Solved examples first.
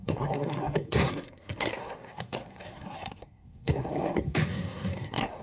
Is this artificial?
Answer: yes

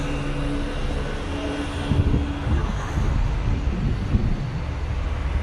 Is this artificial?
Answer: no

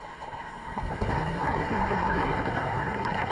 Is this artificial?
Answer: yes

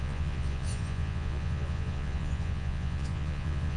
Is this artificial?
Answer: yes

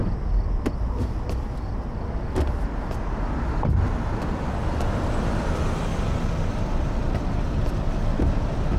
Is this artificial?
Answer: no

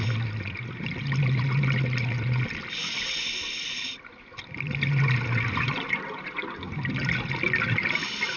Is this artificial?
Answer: no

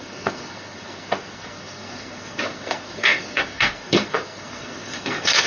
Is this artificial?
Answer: yes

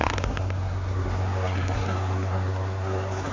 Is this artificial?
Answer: yes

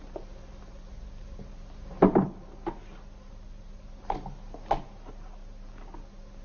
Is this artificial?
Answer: no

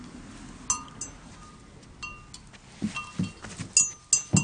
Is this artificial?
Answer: no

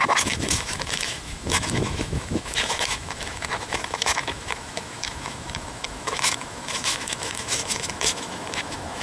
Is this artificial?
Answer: yes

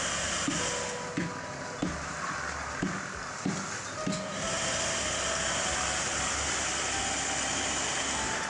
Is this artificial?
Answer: no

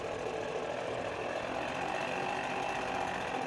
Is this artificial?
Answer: no